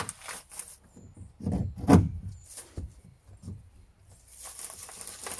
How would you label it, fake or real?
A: real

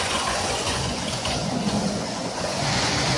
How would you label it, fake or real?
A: fake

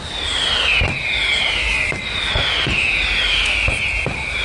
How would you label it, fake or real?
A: real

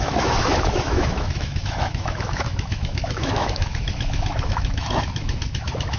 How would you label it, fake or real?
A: fake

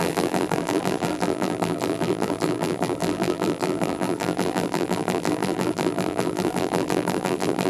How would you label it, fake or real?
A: fake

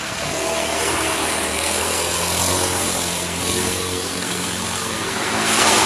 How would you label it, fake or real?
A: fake